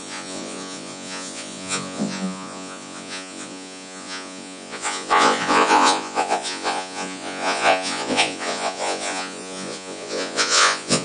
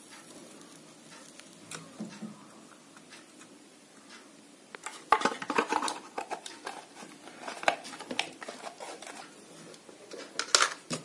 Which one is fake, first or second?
first